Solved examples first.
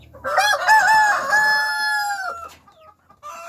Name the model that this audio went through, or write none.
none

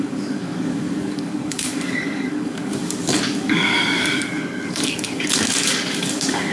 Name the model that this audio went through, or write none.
codec, DAC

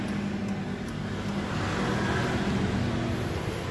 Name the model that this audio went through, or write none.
none